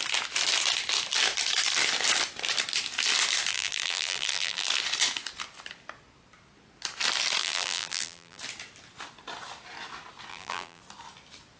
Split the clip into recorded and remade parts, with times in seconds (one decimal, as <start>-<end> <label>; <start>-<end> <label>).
0.0-3.5 recorded; 3.5-4.7 remade; 4.7-7.4 recorded; 7.4-8.4 remade; 8.4-10.3 recorded; 10.3-10.8 remade; 10.8-11.6 recorded